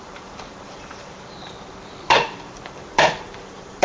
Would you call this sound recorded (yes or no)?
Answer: no